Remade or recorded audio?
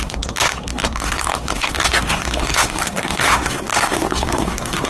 remade